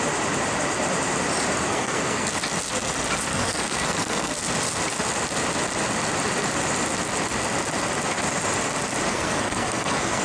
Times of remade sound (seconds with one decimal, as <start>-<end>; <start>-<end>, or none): 1.7-2.3; 3.3-4.3; 9.1-10.2

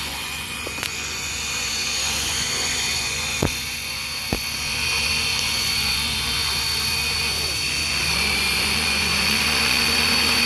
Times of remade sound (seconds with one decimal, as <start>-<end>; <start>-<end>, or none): 0.0-10.5